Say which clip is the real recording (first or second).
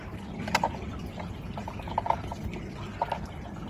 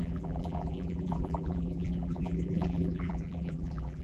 first